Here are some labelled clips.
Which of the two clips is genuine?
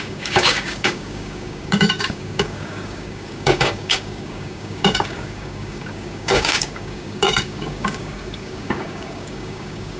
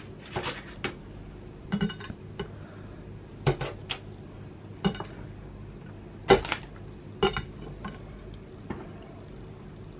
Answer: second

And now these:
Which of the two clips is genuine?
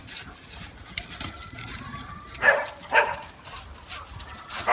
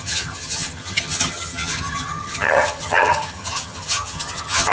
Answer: first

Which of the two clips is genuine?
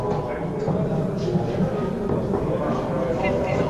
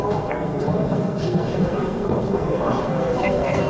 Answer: first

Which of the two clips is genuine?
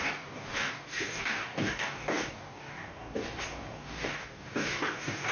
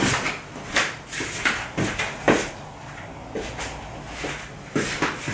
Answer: second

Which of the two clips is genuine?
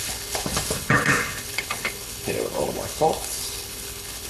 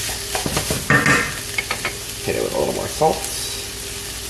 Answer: second